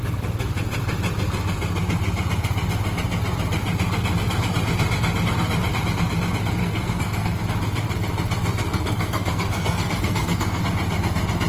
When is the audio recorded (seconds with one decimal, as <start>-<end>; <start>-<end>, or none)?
0.0-6.6; 7.4-8.7; 10.6-11.5